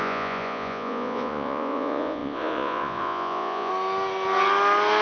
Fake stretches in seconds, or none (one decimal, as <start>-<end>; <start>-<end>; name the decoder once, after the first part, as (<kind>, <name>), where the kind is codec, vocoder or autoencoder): 0.0-3.7 (vocoder, Vocos)